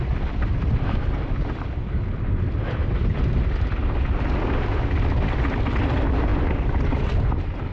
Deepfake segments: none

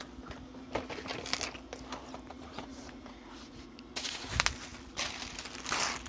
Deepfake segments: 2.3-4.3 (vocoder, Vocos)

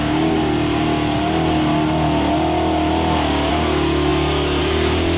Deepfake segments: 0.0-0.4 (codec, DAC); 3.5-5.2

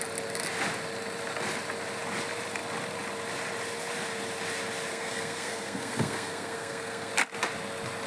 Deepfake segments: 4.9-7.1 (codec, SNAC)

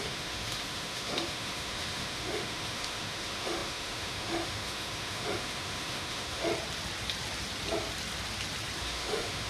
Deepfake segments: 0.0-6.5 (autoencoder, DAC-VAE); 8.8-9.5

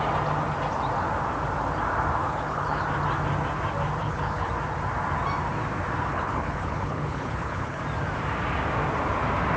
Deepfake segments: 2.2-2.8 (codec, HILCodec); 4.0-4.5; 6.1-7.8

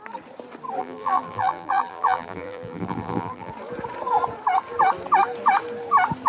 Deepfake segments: 0.8-3.5 (vocoder, BigVGAN v2)